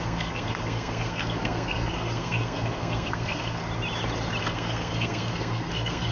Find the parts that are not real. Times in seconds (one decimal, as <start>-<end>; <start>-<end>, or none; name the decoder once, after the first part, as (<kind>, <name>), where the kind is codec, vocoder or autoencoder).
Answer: 0.0-3.6 (codec, SNAC); 4.4-6.1